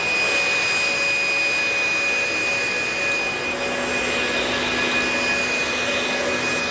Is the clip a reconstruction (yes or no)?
no